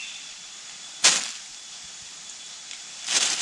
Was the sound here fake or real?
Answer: real